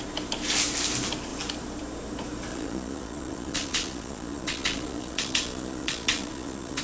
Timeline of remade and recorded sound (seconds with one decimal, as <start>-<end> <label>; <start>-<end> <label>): 0.0-2.5 recorded; 2.5-6.8 remade